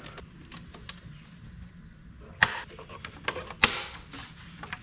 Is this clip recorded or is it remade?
recorded